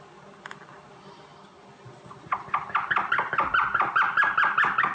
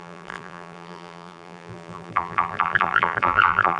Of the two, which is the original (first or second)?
first